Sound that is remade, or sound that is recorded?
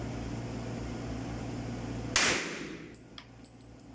recorded